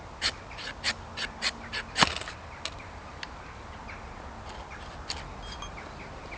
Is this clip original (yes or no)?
yes